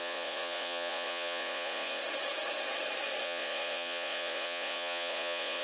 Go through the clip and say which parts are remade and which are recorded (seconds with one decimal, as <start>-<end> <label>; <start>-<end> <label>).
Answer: 0.0-2.0 remade; 2.0-3.2 recorded; 3.2-5.6 remade